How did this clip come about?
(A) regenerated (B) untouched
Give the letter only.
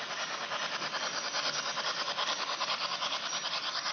B